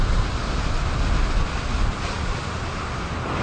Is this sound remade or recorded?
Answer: recorded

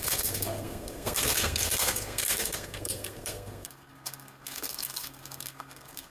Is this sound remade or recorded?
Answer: remade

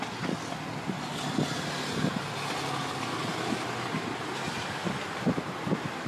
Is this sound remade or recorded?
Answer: recorded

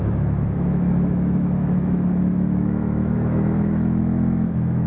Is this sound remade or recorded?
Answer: remade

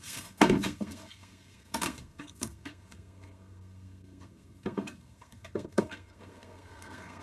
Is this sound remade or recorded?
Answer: remade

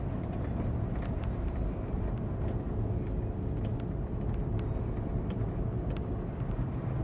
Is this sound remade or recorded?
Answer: recorded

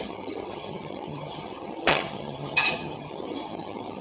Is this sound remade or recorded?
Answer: remade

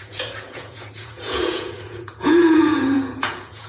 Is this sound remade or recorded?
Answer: remade